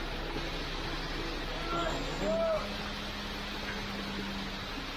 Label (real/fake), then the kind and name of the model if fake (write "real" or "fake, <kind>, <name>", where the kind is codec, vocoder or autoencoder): real